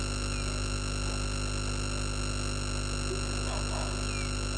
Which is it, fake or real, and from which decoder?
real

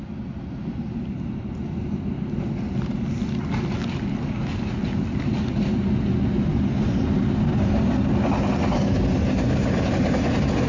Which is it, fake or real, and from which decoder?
real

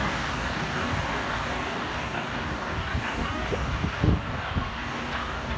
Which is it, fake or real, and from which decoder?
fake, codec, DAC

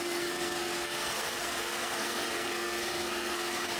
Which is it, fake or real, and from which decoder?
fake, codec, SNAC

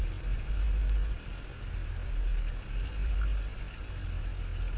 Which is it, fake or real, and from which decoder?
real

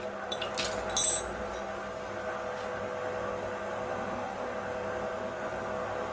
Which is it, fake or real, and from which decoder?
real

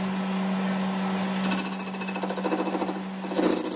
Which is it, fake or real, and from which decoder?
real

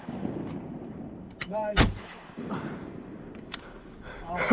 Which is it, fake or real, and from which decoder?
fake, vocoder, BigVGAN v2